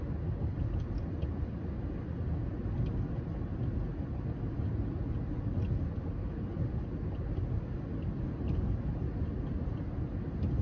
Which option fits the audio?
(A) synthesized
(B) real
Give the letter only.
B